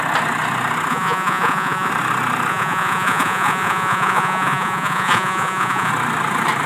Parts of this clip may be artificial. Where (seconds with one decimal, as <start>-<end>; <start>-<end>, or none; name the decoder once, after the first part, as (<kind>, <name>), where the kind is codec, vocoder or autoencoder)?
0.9-1.9 (vocoder, Vocos); 2.5-5.9